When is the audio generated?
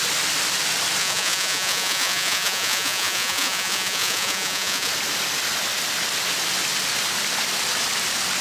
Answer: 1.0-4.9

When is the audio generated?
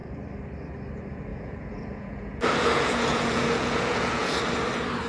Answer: 1.3-4.4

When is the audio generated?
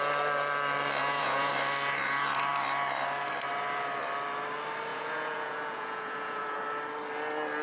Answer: 1.0-1.5; 4.9-6.6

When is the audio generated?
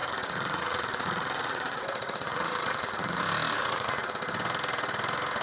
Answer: 0.0-3.2; 3.6-4.1